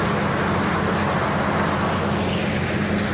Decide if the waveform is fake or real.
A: real